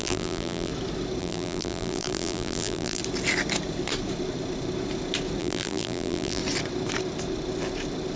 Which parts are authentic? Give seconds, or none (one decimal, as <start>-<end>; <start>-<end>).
0.7-1.2; 3.0-5.4; 6.4-8.2